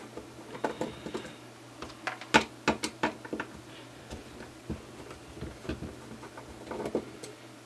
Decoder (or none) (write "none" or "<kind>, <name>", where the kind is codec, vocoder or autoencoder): none